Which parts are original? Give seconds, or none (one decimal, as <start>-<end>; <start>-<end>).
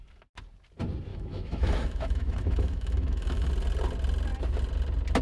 0.0-1.1; 3.5-5.2